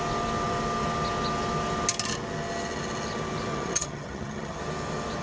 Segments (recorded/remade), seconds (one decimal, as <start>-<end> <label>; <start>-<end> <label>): 0.0-3.5 recorded; 3.5-4.6 remade; 4.6-5.2 recorded